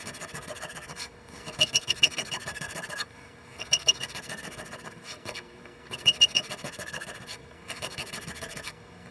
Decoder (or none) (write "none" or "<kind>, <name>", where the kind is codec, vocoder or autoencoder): codec, SNAC